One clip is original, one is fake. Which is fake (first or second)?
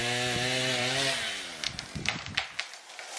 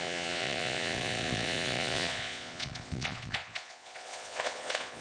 second